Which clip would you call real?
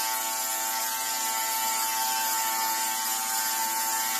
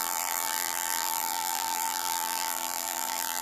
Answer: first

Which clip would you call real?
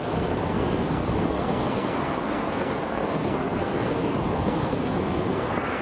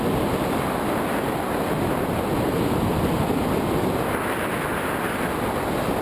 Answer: second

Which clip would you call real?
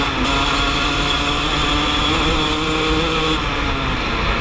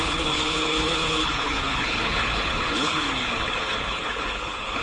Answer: first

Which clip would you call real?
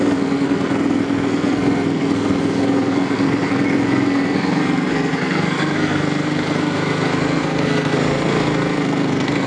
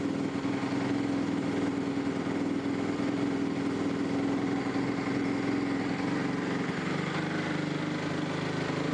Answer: second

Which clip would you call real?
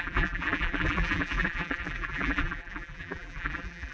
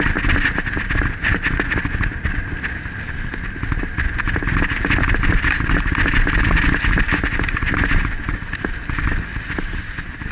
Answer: second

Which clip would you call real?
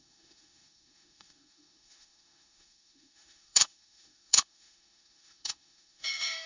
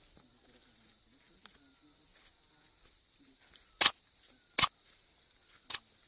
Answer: second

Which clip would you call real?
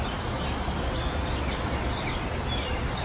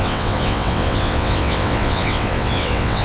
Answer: first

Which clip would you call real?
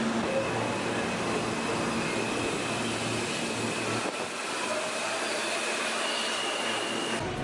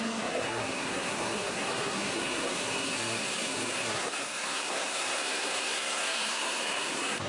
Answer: first